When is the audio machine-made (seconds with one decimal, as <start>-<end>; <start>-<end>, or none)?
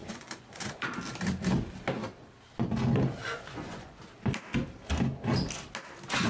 0.0-0.8; 3.2-4.0